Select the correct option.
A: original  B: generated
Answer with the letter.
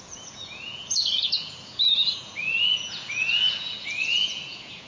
B